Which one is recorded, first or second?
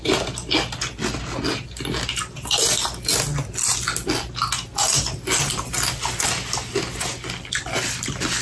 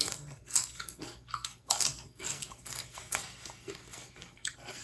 first